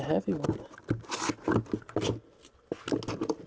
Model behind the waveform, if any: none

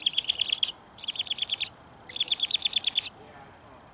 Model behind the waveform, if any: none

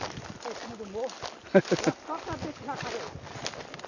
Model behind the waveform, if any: none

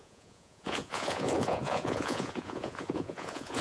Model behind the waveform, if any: vocoder, Vocos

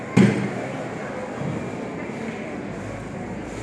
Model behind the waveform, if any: none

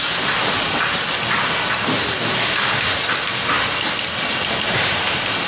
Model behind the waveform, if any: none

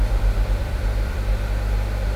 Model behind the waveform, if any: vocoder, BigVGAN v2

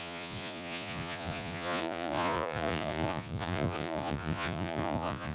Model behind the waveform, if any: vocoder, Vocos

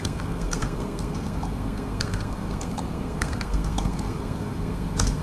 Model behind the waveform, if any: codec, SNAC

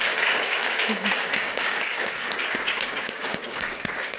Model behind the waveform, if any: codec, DAC